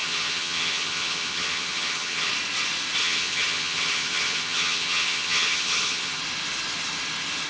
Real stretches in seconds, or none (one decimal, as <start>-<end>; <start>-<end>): 2.3-3.0; 6.2-7.5